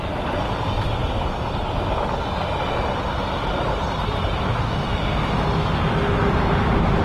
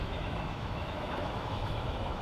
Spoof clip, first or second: second